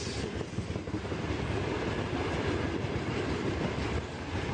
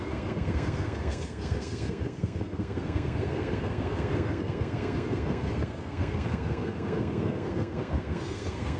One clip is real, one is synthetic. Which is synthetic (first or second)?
second